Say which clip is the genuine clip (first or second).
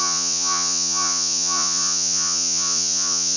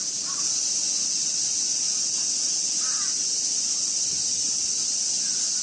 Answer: second